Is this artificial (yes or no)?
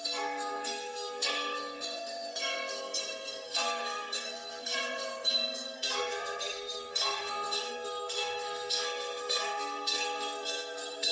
yes